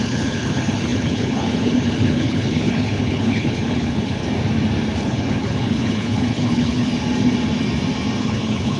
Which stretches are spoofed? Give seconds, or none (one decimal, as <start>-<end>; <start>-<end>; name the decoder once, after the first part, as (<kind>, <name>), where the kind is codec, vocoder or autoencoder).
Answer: 0.0-4.2 (codec, HILCodec); 5.0-6.9; 8.2-8.8